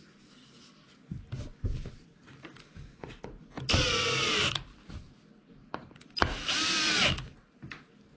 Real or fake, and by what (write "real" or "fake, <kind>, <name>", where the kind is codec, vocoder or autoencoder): fake, vocoder, BigVGAN v2